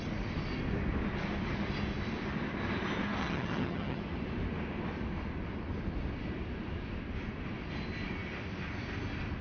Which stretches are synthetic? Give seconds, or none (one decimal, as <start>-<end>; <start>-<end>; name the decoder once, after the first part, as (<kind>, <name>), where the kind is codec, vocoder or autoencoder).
3.2-4.0 (vocoder, HiFi-GAN)